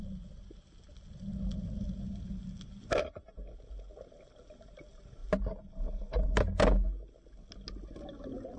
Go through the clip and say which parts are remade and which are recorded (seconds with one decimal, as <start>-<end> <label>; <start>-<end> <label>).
0.0-8.6 recorded